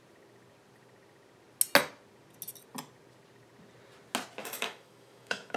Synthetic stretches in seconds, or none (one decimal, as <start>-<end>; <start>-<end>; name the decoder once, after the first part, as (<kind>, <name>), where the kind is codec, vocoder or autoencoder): 4.4-5.6 (autoencoder, DAC-VAE)